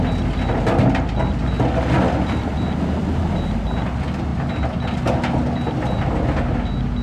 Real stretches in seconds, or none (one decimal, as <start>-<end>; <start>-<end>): 0.0-4.3; 5.2-7.0